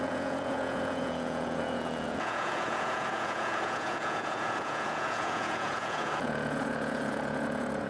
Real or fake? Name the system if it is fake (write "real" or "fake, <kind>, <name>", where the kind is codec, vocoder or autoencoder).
fake, vocoder, Vocos